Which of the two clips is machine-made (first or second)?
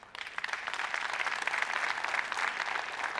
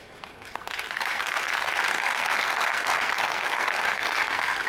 second